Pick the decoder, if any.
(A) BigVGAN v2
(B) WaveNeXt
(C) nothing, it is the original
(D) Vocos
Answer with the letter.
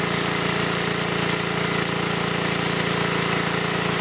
C